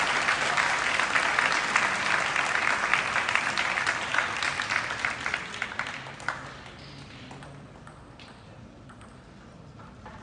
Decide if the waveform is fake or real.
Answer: real